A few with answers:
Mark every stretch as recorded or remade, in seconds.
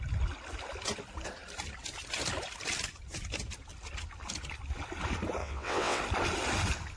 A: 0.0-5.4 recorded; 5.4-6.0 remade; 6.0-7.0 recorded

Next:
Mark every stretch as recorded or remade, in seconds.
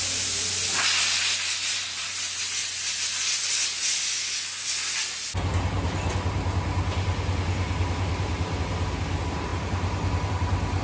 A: 0.0-10.8 recorded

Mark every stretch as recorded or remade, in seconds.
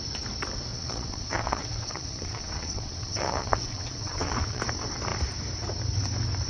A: 0.0-0.7 recorded; 0.7-4.6 remade; 4.6-6.5 recorded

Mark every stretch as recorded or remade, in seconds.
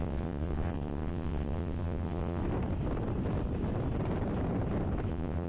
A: 0.0-2.4 remade; 2.4-5.1 recorded; 5.1-5.5 remade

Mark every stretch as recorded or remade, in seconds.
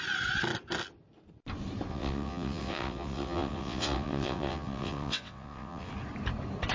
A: 0.0-1.9 recorded; 1.9-5.9 remade; 5.9-6.7 recorded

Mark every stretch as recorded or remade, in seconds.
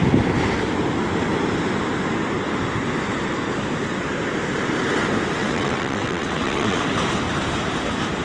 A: 0.0-5.4 recorded; 5.4-6.8 remade; 6.8-8.2 recorded